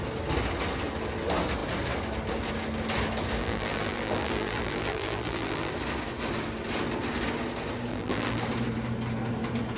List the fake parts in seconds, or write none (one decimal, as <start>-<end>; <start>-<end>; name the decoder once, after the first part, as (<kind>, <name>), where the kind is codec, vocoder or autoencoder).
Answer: 3.4-5.7 (vocoder, BigVGAN v2); 7.9-8.4